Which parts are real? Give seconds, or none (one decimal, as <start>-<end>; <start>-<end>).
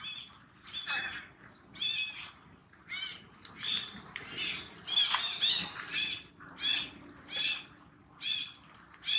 0.0-9.2